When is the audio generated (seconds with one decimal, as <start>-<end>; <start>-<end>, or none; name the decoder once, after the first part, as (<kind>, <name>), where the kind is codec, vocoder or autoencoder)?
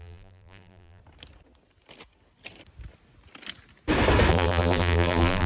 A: 0.0-1.0 (vocoder, BigVGAN v2); 4.3-5.5